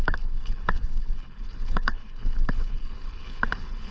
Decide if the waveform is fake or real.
fake